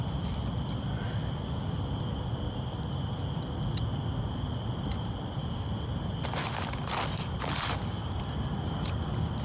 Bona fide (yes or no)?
yes